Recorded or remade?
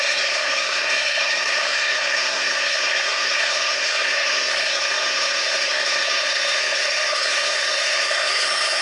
remade